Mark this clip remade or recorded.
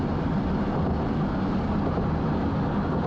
recorded